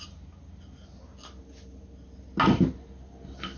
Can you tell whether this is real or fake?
real